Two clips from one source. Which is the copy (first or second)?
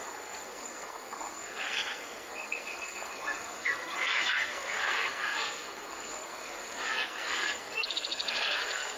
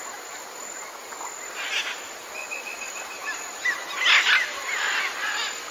first